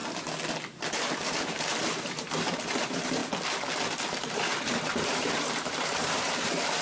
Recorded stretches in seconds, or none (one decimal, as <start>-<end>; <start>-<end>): 0.0-0.9; 3.2-4.1